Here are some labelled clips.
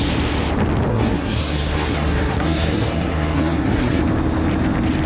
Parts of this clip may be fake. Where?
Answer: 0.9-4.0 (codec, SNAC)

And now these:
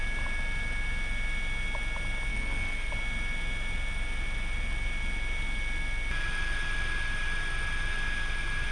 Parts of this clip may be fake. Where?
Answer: 2.3-2.9 (codec, SNAC)

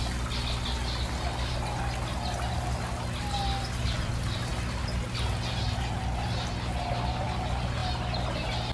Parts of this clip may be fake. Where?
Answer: none

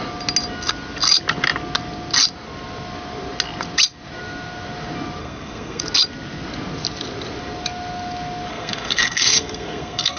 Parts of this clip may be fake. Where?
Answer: 5.2-5.8 (codec, SNAC); 8.5-10.2

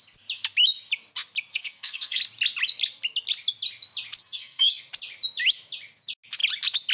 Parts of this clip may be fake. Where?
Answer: 1.5-2.2 (codec, SNAC); 4.2-4.8

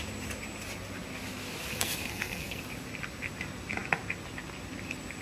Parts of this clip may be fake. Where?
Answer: 1.7-2.6 (codec, SNAC)

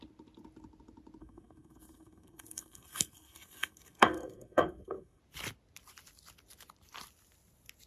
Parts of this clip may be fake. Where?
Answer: 1.2-5.2 (codec, SNAC)

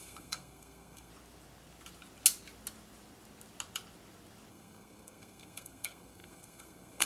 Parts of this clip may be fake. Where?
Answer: 0.0-1.1 (codec, SNAC); 4.5-7.1